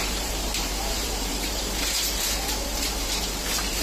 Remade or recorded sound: remade